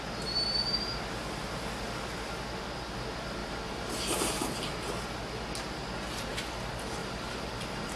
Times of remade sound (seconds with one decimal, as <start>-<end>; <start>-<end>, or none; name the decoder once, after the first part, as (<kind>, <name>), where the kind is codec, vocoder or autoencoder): 3.4-4.9 (vocoder, BigVGAN v2); 7.0-8.0